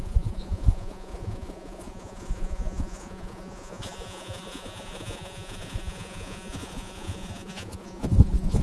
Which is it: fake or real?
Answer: fake